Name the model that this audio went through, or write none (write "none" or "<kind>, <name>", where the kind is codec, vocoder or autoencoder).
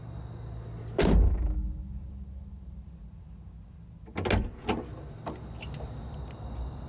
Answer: none